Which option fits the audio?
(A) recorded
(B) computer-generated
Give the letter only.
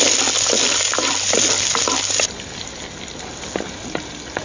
A